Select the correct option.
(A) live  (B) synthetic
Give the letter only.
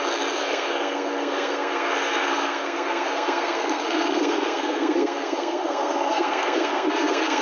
B